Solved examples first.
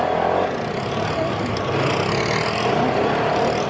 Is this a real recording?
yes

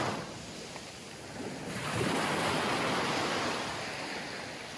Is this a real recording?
yes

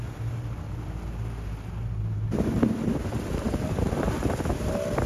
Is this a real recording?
yes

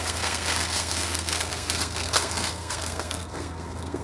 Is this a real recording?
no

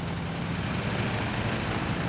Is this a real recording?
yes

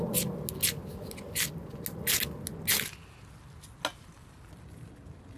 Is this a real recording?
yes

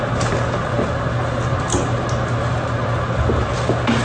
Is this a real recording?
yes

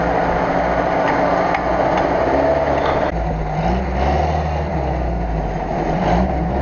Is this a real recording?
yes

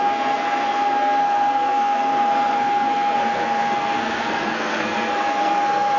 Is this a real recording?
no